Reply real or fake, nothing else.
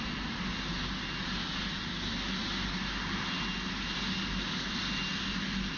real